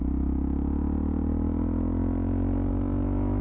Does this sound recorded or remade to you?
recorded